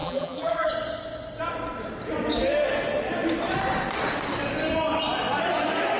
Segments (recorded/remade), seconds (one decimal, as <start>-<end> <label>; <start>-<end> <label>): 0.0-0.7 remade; 0.7-6.0 recorded